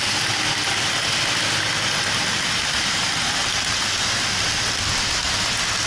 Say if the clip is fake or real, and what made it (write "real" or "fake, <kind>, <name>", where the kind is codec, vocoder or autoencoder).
real